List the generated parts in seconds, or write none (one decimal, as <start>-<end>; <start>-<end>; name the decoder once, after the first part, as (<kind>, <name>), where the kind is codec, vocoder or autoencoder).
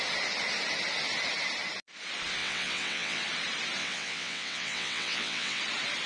2.4-3.2 (vocoder, WaveNeXt); 3.8-5.6